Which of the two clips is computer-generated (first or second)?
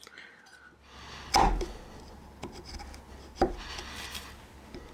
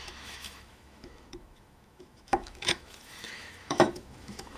second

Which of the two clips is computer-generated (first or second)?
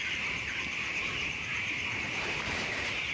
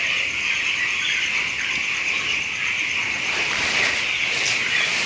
first